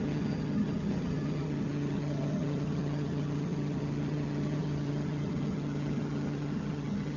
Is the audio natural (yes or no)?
no